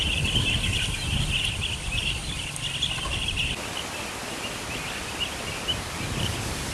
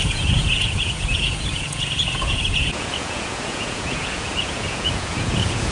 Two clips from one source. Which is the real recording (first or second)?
first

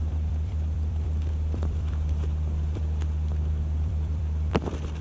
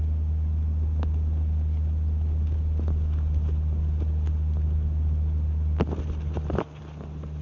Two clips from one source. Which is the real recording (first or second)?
second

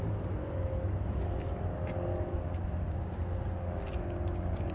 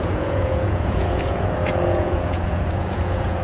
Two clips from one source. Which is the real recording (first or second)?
first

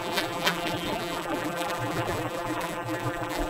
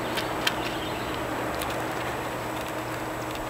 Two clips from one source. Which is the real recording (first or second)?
second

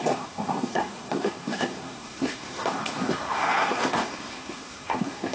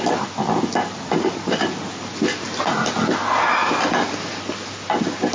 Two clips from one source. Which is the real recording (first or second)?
second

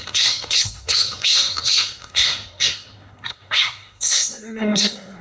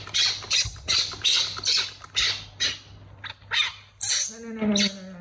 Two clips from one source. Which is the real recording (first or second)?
second